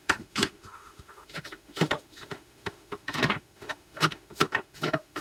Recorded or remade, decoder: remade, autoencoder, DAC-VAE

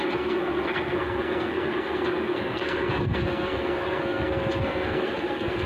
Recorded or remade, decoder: remade, codec, SNAC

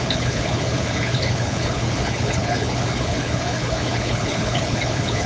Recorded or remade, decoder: remade, codec, HILCodec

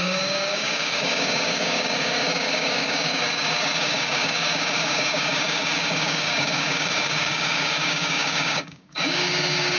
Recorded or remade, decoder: remade, codec, DAC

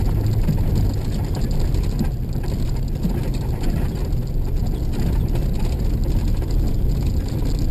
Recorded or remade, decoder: recorded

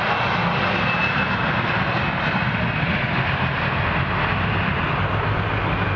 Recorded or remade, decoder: recorded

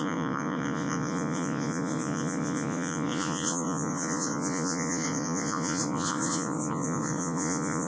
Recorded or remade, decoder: remade, vocoder, Vocos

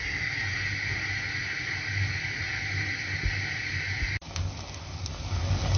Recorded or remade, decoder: recorded